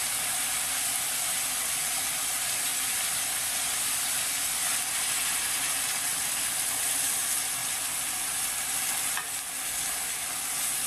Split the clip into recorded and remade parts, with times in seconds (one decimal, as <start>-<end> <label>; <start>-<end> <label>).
0.0-2.7 recorded; 2.7-3.3 remade; 3.3-10.9 recorded